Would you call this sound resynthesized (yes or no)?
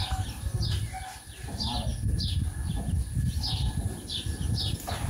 yes